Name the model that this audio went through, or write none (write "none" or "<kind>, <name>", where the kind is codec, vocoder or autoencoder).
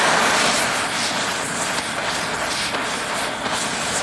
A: none